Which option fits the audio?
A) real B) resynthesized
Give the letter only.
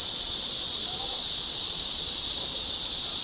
B